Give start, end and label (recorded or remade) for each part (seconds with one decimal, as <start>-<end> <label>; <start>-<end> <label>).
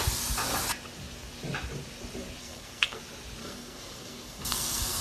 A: 0.0-2.4 recorded; 2.4-3.0 remade; 3.0-3.4 recorded; 3.4-5.0 remade